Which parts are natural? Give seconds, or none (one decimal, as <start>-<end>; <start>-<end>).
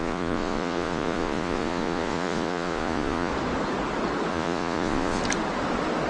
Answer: 3.3-4.3; 5.2-6.1